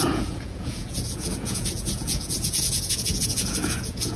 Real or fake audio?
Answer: fake